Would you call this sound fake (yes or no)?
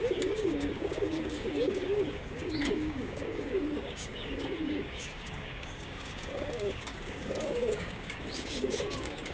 yes